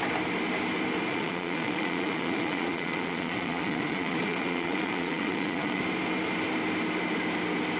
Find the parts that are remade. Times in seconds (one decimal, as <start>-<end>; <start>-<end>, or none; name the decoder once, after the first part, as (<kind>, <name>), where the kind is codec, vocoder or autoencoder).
1.1-5.8 (vocoder, Vocos)